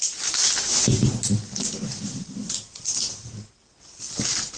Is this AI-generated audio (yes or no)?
no